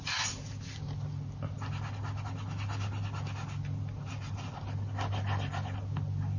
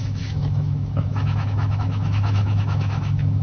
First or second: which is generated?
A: second